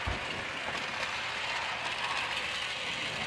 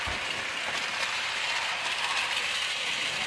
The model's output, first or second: second